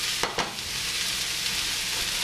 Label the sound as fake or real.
real